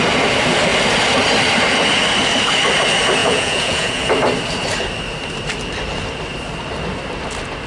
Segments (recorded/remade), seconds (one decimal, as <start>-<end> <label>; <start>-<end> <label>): 0.0-3.2 recorded; 3.2-4.1 remade; 4.1-7.7 recorded